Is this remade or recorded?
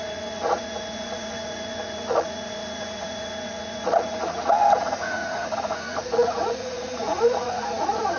remade